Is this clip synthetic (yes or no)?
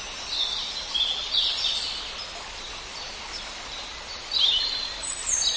no